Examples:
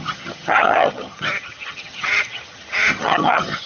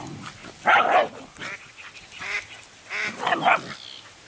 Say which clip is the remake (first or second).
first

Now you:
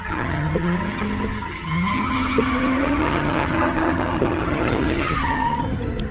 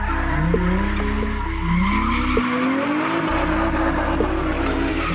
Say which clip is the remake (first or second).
first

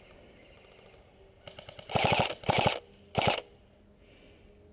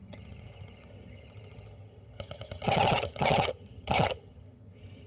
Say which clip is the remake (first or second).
second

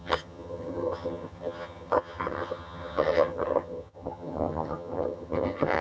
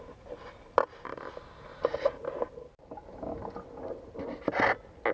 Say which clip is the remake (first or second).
first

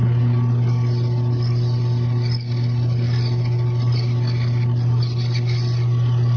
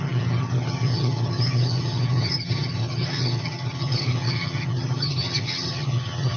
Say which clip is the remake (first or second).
second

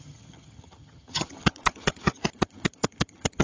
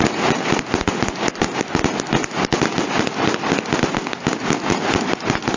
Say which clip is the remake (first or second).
first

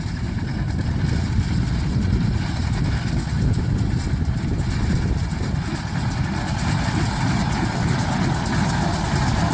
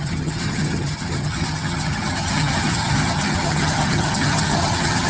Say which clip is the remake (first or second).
second